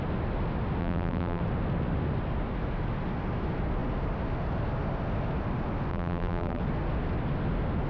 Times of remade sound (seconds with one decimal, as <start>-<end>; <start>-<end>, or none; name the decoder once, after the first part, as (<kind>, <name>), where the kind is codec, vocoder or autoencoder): 0.8-1.4 (vocoder, BigVGAN v2); 5.9-6.6